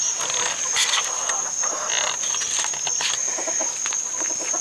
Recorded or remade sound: recorded